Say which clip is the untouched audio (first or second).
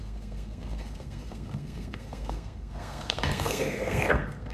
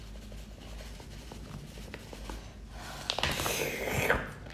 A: second